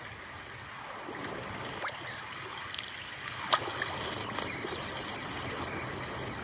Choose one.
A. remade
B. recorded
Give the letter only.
B